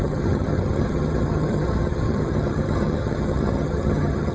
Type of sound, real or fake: fake